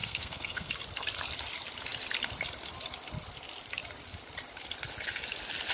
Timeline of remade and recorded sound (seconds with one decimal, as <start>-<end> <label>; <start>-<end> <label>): 0.0-0.7 remade; 0.7-5.7 recorded